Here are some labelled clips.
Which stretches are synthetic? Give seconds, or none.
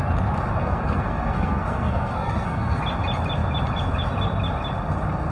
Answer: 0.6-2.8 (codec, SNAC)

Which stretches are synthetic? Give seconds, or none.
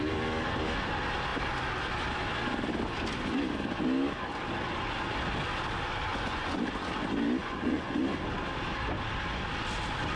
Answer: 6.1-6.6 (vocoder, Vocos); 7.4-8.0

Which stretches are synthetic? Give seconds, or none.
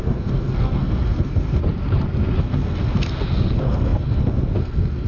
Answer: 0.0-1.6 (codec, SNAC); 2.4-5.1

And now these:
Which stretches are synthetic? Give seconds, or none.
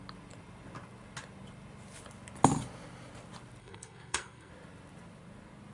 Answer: 3.6-4.5 (codec, SNAC)